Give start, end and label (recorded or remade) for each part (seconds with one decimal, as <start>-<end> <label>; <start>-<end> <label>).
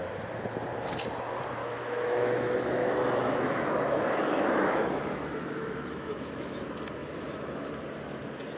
0.0-1.6 recorded; 1.6-6.6 remade; 6.6-7.0 recorded; 7.0-7.7 remade; 7.7-8.6 recorded